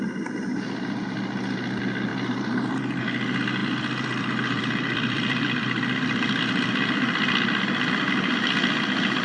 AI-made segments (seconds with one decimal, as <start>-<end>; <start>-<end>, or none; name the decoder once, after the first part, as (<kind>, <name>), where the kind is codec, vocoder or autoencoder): 2.1-3.0 (vocoder, BigVGAN v2); 3.6-8.1